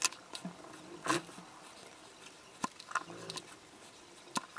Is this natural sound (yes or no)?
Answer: yes